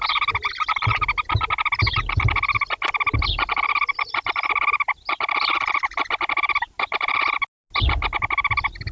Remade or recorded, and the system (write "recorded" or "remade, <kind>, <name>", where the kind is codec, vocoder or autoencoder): recorded